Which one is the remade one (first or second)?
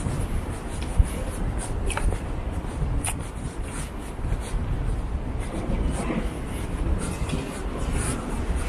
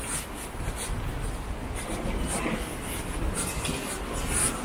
first